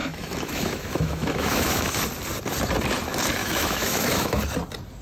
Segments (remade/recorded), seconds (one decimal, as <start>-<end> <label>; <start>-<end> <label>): 0.0-2.0 remade; 2.0-3.4 recorded; 3.4-4.4 remade; 4.4-5.0 recorded